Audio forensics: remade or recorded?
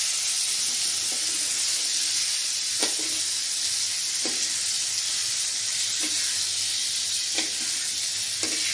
recorded